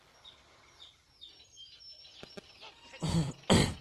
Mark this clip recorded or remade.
recorded